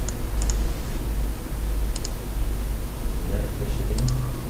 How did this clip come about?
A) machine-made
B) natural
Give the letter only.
B